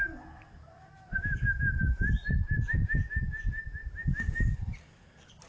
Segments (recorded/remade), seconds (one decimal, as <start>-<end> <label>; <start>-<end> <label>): 0.0-5.5 recorded